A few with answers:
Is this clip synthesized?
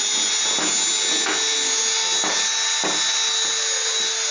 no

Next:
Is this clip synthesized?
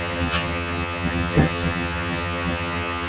yes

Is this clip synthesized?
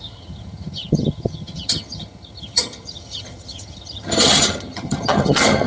yes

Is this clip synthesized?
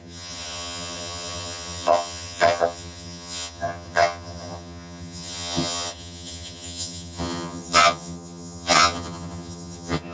yes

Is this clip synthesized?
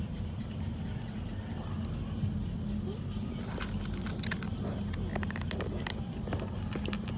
no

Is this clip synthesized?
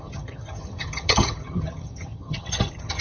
yes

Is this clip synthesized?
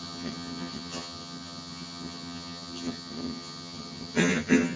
yes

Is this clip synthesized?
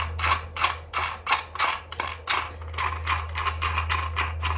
no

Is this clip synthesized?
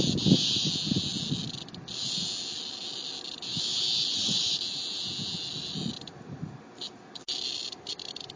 no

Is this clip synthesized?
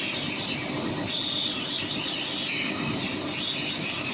no